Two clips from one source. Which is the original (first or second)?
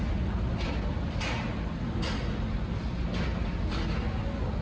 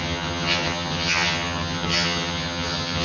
first